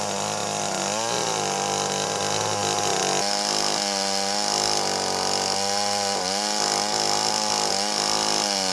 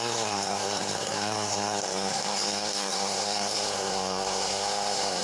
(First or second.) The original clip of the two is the first